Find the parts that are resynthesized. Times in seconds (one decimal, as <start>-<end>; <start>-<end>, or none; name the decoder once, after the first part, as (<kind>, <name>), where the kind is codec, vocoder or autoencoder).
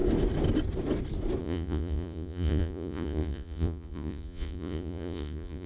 1.4-5.7 (vocoder, Vocos)